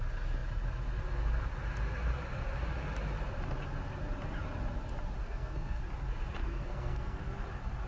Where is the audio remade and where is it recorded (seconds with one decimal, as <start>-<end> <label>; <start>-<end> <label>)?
0.0-5.2 recorded; 5.2-5.8 remade; 5.8-6.4 recorded; 6.4-7.2 remade; 7.2-7.9 recorded